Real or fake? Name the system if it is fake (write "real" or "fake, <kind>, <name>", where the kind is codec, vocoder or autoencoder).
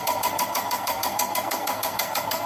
fake, codec, SNAC